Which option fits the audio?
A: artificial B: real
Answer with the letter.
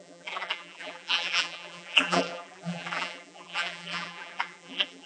A